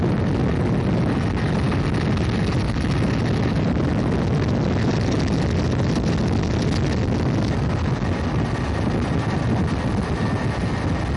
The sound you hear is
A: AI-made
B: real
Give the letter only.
B